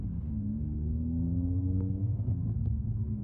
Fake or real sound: fake